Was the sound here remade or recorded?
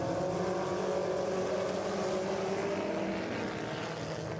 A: recorded